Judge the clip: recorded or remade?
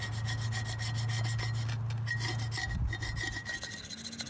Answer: recorded